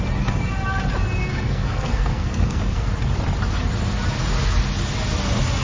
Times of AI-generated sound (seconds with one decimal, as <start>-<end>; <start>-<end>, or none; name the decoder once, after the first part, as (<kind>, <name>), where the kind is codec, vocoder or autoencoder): 1.3-2.9 (codec, SNAC)